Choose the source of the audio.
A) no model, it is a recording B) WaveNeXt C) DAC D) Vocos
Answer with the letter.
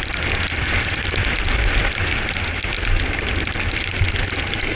A